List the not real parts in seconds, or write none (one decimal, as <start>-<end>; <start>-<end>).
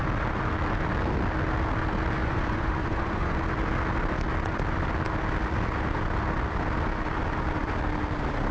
2.2-3.4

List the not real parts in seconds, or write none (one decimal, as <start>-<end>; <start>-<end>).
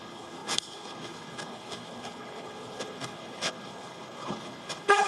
0.0-5.1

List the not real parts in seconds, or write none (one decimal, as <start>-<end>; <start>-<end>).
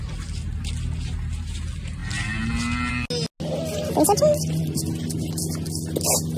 none